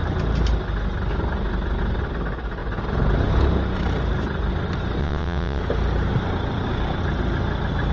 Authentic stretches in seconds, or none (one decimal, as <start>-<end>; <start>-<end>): 0.0-5.0; 5.6-7.9